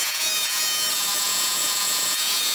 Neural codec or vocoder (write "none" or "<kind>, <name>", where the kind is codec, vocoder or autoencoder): vocoder, Vocos